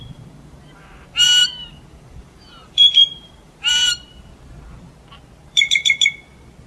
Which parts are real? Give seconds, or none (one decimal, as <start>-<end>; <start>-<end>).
3.9-5.4; 6.1-6.7